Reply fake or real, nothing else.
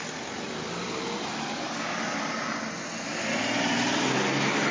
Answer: real